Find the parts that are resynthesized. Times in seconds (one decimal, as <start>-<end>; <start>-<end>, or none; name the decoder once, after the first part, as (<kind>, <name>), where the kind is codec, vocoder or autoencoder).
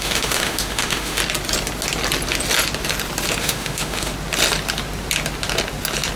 0.0-1.2 (autoencoder, DAC-VAE); 3.4-4.1